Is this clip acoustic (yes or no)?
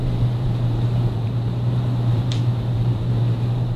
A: no